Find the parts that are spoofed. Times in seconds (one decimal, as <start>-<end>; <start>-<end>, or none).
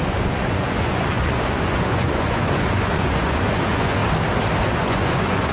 0.0-4.0; 4.7-5.5